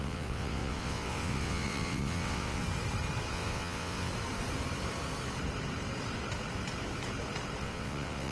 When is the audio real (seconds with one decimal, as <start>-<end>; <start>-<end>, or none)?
2.6-3.3; 4.1-7.6